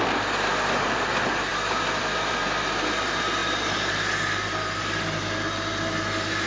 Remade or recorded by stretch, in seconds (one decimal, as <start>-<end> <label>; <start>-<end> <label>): 0.0-6.5 recorded